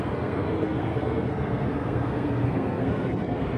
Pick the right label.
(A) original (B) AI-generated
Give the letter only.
B